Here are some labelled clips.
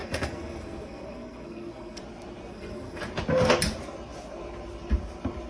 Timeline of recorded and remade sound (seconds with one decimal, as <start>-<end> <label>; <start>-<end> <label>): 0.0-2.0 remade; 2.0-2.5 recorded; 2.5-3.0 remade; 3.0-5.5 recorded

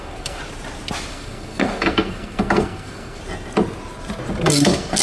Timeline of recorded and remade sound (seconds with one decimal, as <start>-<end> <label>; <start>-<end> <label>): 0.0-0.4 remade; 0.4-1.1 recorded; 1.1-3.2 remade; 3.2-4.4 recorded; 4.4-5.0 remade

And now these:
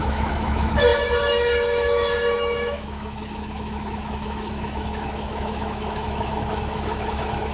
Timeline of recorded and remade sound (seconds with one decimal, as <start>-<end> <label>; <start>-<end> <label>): 0.0-7.5 remade